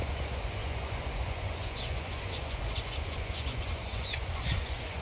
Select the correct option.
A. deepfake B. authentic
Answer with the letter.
A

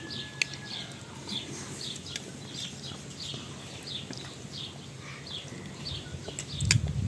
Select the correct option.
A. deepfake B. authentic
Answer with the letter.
B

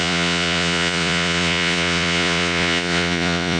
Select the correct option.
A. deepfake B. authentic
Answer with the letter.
A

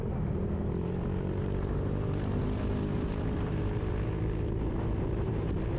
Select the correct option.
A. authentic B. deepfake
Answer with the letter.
B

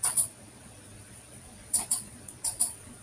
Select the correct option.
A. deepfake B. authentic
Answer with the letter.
A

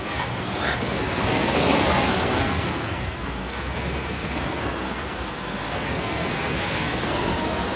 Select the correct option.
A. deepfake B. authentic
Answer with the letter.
A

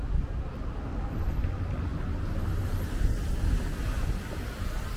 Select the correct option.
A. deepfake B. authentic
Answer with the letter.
B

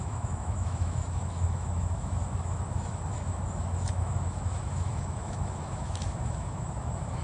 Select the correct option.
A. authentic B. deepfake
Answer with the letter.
B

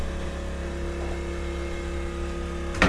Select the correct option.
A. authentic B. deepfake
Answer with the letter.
A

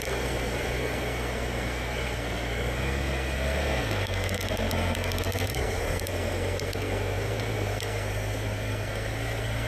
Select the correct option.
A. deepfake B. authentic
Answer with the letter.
A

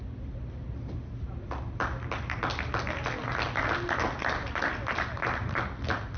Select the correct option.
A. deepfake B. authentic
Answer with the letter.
B